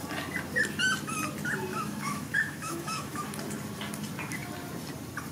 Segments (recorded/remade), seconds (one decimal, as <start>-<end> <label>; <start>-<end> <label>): 0.0-1.7 recorded; 1.7-3.2 remade; 3.2-5.3 recorded